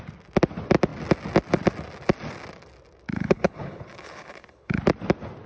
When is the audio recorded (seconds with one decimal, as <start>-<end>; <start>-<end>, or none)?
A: 0.0-3.1; 4.8-5.5